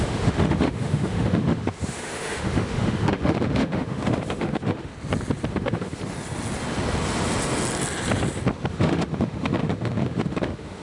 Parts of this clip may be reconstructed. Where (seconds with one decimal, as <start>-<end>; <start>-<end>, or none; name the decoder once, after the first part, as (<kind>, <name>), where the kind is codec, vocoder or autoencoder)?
0.0-4.9 (autoencoder, DAC-VAE); 5.5-6.0; 8.7-10.8